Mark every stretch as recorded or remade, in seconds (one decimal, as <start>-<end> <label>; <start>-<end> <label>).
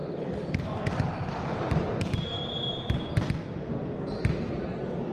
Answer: 0.0-3.1 remade; 3.1-5.1 recorded